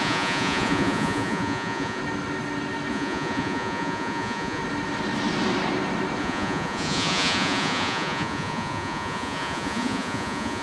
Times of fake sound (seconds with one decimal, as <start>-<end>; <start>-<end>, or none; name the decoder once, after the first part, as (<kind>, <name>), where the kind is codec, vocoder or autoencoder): 0.0-2.0 (vocoder, Vocos); 2.9-4.6; 6.2-10.6